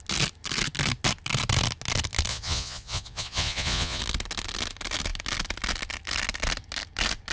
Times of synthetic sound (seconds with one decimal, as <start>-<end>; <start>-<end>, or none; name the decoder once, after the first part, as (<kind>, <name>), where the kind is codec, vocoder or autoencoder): 2.3-4.0 (vocoder, Vocos)